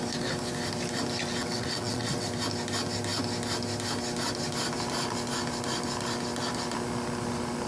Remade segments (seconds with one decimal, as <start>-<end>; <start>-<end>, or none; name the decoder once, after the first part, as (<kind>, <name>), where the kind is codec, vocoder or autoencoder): 1.4-2.3 (vocoder, WaveNeXt)